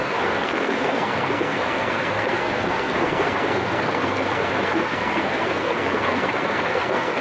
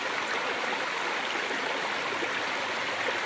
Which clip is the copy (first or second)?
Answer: first